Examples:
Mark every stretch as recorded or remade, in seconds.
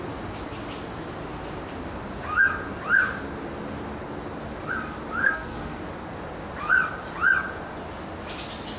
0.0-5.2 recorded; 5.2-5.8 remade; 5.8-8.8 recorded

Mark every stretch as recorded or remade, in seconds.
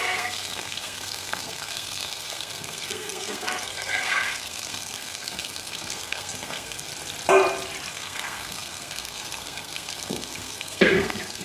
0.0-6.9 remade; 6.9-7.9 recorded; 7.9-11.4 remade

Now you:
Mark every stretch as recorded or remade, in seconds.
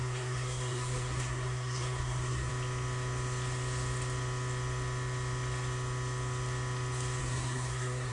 0.0-2.5 remade; 2.5-7.2 recorded; 7.2-8.1 remade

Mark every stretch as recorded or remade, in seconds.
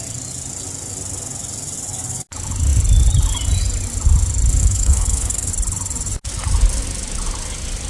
0.0-4.6 recorded; 4.6-5.5 remade; 5.5-7.9 recorded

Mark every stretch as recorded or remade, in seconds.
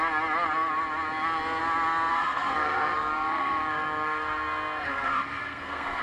0.0-2.1 recorded; 2.1-6.0 remade